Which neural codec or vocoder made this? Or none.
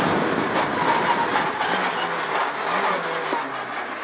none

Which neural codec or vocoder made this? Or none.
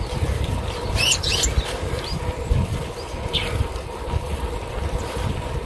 none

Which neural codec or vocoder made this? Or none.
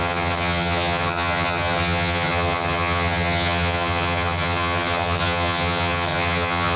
vocoder, HiFi-GAN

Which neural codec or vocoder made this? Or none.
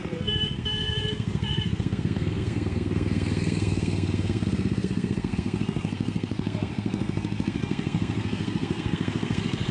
codec, SNAC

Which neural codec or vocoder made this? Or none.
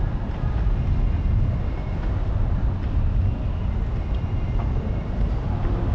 none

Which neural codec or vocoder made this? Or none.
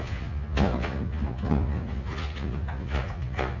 vocoder, Vocos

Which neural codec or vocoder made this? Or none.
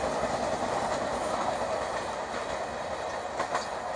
none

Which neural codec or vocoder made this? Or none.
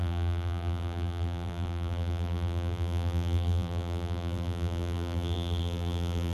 vocoder, BigVGAN v2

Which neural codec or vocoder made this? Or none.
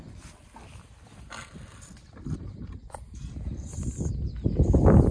none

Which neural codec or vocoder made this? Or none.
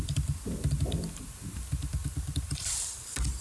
none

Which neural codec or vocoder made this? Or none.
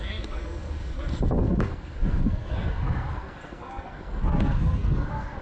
codec, SNAC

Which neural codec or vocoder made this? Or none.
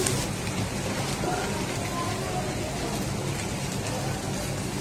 none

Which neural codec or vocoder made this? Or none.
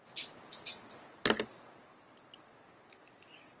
none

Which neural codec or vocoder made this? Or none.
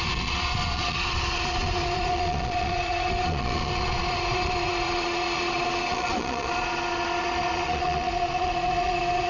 vocoder, Vocos